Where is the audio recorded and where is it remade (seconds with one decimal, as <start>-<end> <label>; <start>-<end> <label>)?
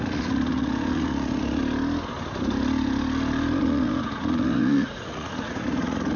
0.0-1.6 remade; 1.6-3.6 recorded; 3.6-6.2 remade